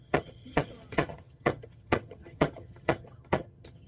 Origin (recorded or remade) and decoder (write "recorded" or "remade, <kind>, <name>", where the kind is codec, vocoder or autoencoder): remade, vocoder, HiFi-GAN